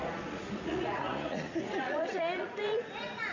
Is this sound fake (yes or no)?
yes